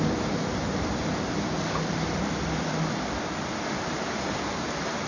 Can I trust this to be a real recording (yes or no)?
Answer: yes